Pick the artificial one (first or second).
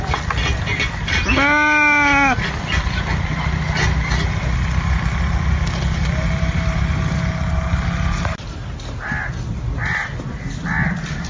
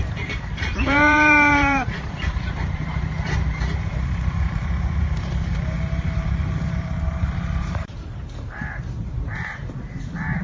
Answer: second